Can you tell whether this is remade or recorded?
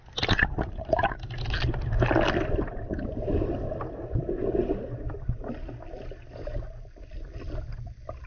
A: recorded